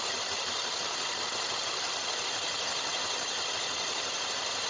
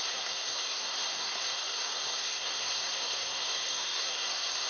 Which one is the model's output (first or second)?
second